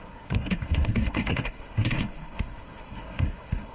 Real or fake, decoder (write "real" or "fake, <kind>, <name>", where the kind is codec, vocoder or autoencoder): fake, codec, SNAC